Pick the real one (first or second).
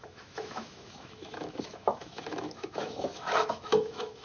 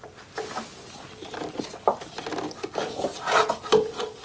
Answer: second